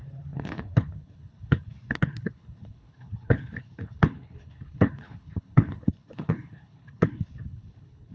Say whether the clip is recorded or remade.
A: remade